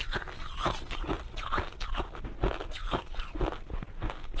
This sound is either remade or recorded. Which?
recorded